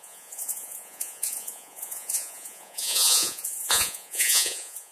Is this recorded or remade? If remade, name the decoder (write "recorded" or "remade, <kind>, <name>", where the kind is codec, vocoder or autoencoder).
remade, vocoder, Vocos